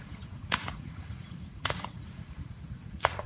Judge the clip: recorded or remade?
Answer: remade